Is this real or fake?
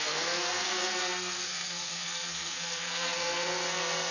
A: fake